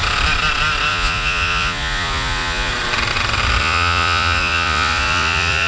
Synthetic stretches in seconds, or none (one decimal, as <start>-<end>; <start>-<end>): 0.9-2.7; 3.6-5.7